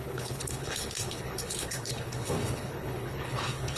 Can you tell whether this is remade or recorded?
remade